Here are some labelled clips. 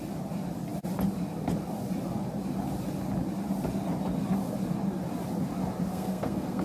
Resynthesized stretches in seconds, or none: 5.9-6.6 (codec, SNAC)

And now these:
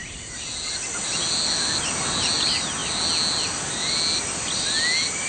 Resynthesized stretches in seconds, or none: none

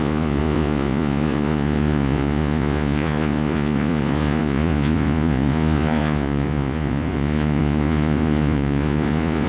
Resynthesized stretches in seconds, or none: 0.0-9.5 (vocoder, Vocos)

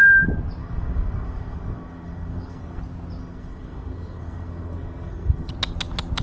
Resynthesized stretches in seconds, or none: 0.6-2.8 (codec, SNAC); 3.2-5.5

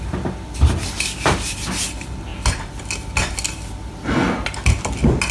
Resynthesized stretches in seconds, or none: none

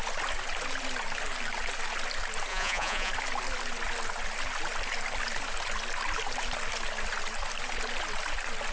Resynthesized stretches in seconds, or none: 2.5-3.1 (vocoder, Vocos)